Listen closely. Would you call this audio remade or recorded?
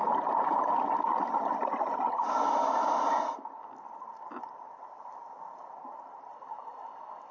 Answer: recorded